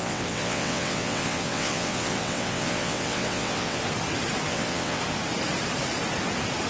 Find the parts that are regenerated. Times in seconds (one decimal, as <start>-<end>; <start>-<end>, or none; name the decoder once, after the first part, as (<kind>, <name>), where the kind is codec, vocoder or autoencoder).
0.0-3.8 (vocoder, WaveNeXt); 4.5-5.0